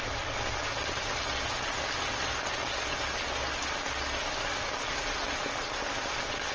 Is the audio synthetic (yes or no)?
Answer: no